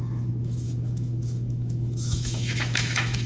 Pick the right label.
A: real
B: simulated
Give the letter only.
B